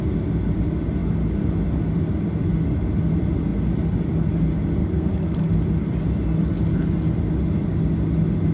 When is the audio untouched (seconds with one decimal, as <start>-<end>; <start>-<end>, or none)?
0.0-4.8; 5.5-8.5